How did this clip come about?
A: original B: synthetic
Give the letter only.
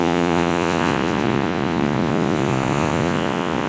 B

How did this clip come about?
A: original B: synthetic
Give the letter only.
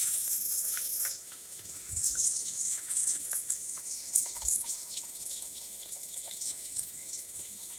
B